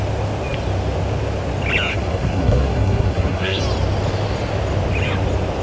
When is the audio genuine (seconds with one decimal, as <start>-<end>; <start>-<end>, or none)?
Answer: 0.0-1.9; 3.6-5.6